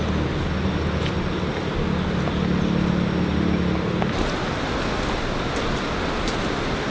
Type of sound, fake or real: real